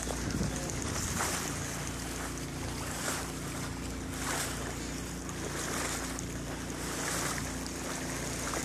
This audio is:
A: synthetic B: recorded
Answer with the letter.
B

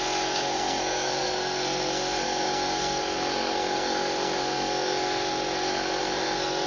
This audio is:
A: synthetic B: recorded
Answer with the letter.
A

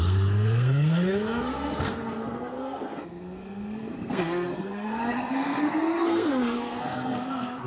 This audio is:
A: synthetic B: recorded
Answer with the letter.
A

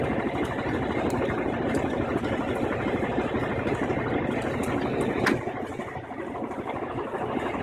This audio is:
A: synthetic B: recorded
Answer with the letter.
B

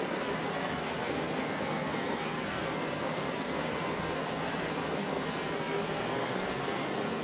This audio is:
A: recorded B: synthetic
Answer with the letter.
B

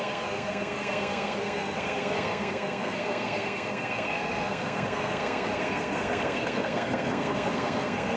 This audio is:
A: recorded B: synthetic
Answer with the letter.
B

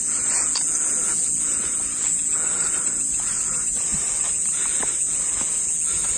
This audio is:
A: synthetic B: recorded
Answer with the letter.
B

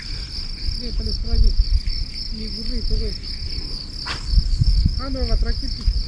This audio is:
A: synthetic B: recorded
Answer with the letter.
B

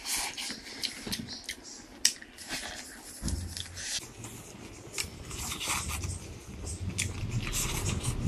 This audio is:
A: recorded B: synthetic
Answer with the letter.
A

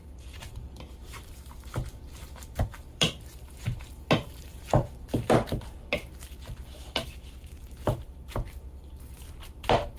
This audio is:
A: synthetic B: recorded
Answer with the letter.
A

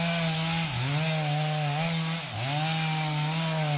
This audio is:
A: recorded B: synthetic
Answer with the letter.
A